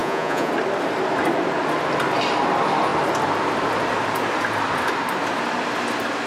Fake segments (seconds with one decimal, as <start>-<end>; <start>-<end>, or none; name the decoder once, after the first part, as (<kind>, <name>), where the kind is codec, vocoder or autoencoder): 0.0-0.5 (vocoder, Vocos)